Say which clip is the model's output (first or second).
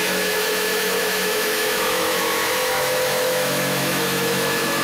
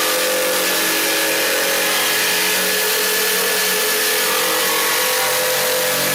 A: first